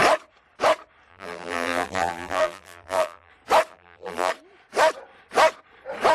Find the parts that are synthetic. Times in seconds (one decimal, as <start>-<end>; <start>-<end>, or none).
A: 1.1-3.3; 3.7-4.3